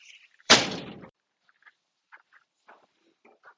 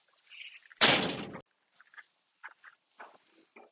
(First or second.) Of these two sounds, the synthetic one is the first